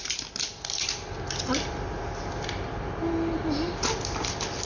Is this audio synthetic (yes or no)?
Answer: no